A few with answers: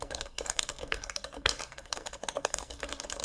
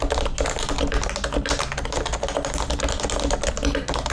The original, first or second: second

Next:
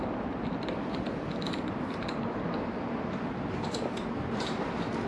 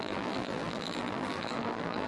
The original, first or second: first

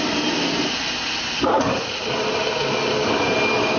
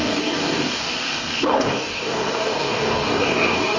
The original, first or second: first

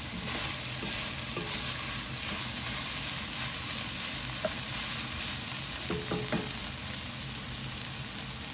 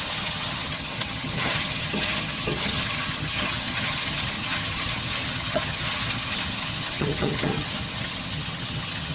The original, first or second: first